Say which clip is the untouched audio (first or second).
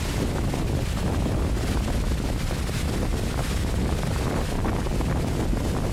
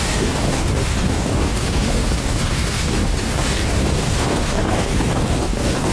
first